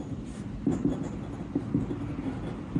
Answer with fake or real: real